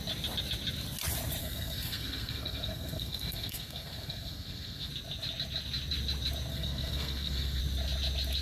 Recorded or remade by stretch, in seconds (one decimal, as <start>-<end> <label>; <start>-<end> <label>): 0.0-1.4 recorded; 1.4-4.9 remade; 4.9-6.5 recorded; 6.5-7.6 remade; 7.6-8.4 recorded